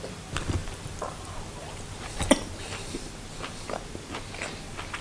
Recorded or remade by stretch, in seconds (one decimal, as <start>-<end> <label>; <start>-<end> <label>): 0.0-0.6 recorded; 0.6-3.1 remade; 3.1-5.0 recorded